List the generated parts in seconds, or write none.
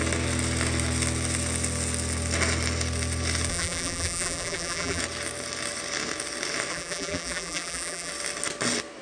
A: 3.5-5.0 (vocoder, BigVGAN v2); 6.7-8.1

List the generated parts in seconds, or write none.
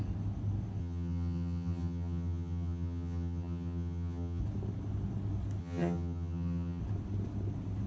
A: 0.8-4.4 (vocoder, HiFi-GAN); 5.6-6.8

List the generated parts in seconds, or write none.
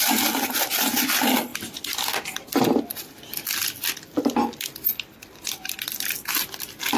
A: none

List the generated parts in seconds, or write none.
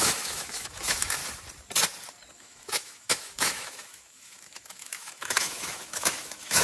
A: 0.0-1.2 (autoencoder, DAC-VAE); 2.3-6.6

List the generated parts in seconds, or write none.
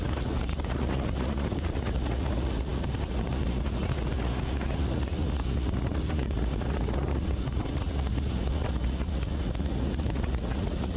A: 0.0-11.0 (vocoder, Vocos)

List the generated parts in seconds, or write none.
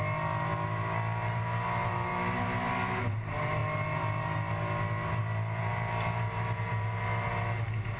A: none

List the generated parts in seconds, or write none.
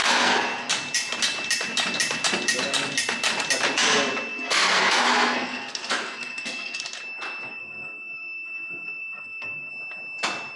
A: 0.0-0.7 (codec, SNAC); 4.3-6.8; 7.5-9.7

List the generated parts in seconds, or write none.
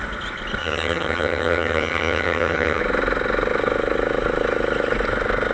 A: 0.6-2.8 (vocoder, HiFi-GAN)